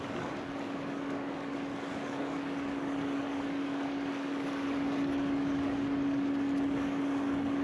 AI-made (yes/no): yes